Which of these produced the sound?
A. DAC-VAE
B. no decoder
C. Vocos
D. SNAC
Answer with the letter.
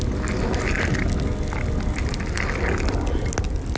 B